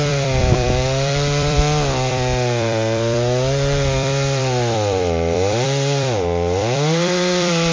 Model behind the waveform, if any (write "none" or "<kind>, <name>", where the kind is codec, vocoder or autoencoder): vocoder, BigVGAN v2